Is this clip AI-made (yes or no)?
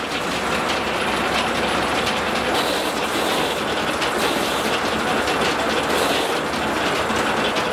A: no